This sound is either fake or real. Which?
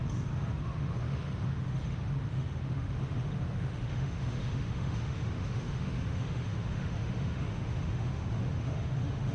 fake